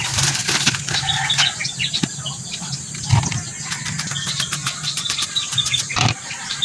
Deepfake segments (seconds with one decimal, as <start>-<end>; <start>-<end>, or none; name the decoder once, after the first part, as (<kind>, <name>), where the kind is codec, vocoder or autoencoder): 4.6-6.6 (vocoder, BigVGAN v2)

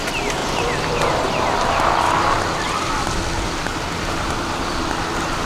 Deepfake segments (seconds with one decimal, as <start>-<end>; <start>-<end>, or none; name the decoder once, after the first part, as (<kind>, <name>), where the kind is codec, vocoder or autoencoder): 0.4-3.2 (vocoder, BigVGAN v2); 3.7-4.7

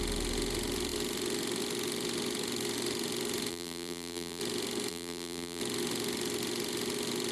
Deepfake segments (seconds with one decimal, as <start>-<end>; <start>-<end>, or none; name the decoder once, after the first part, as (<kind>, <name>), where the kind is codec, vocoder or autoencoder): 3.5-4.4 (vocoder, BigVGAN v2); 4.9-5.6